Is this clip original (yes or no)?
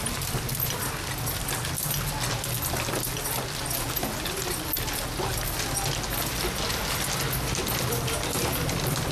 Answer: yes